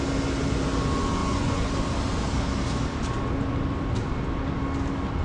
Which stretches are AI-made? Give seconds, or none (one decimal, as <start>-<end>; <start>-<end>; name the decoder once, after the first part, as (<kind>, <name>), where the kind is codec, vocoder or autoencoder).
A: 1.2-1.7 (vocoder, Vocos)